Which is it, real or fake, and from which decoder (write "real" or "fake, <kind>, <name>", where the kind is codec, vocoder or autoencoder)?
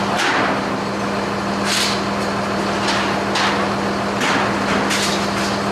real